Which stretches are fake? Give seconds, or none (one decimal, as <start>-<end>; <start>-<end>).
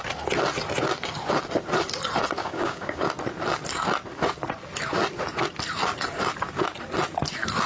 2.4-3.1